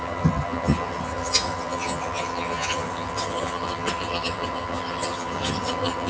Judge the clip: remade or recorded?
remade